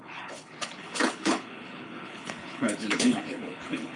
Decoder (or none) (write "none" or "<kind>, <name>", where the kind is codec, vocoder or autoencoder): codec, HILCodec